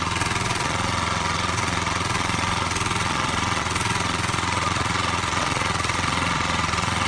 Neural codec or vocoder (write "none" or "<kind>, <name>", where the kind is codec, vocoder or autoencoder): vocoder, Vocos